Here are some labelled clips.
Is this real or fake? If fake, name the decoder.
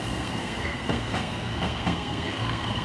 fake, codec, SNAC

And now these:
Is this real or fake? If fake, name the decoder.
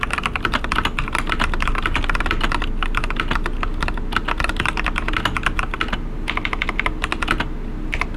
real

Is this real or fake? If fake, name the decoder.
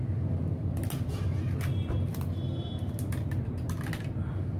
real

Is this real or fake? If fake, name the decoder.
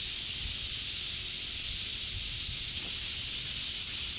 real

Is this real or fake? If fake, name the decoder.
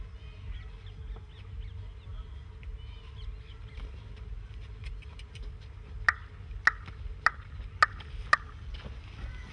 real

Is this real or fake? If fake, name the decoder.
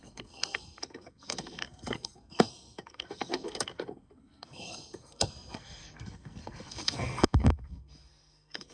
fake, codec, SNAC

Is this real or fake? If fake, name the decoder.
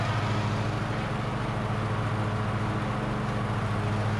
real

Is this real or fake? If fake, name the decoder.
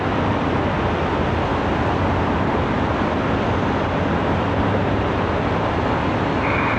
real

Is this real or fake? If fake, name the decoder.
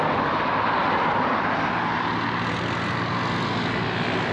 real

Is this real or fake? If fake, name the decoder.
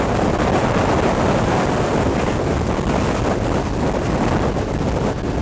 real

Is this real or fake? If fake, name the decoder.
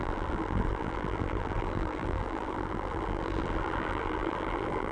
fake, vocoder, BigVGAN v2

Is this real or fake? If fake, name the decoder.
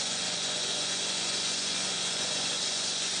fake, vocoder, Vocos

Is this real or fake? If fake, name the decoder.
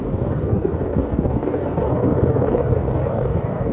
fake, codec, DAC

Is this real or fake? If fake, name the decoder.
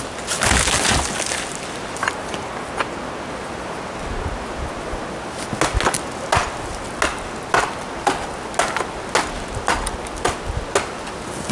real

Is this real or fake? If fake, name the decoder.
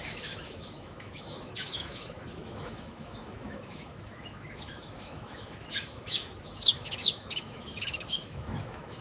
fake, autoencoder, DAC-VAE